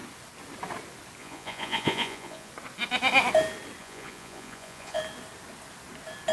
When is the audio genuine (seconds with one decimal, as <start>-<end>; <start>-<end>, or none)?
0.0-1.2; 2.5-3.8; 5.0-6.3